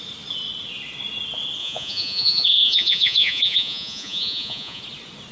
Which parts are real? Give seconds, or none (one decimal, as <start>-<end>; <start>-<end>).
0.0-1.6; 4.8-5.3

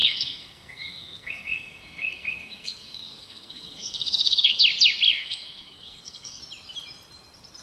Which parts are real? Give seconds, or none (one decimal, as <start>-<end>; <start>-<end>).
4.6-5.2; 6.4-7.6

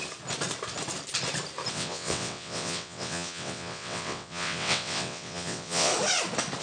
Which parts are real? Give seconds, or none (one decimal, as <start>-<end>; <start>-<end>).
0.0-1.7; 5.9-6.6

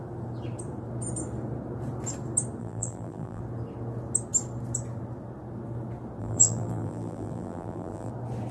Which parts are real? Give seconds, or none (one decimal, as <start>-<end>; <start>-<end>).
0.0-2.6; 3.4-6.2; 8.1-8.5

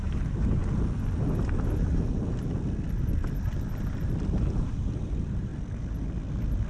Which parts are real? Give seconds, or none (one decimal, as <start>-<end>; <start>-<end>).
0.6-4.6; 5.5-6.7

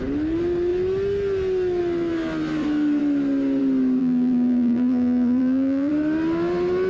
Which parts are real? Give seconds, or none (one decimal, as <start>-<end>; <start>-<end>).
0.0-4.0; 5.9-6.9